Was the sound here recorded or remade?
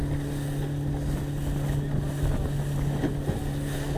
recorded